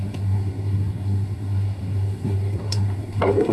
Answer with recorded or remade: remade